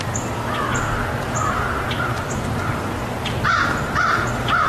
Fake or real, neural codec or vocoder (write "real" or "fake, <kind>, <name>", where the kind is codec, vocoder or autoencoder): real